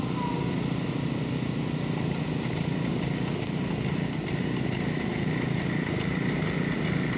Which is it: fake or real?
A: real